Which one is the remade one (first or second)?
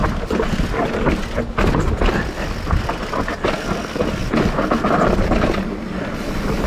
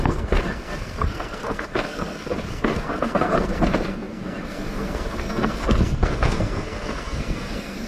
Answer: second